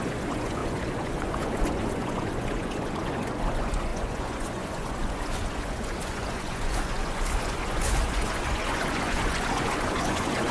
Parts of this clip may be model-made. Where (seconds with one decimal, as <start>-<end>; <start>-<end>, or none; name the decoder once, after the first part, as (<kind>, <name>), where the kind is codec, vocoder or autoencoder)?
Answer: 0.0-10.5 (vocoder, Vocos)